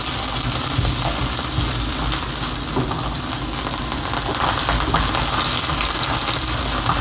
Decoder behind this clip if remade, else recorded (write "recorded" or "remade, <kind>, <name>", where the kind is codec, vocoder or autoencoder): recorded